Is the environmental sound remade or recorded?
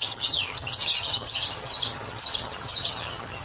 remade